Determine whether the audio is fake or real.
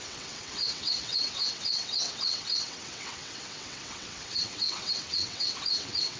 fake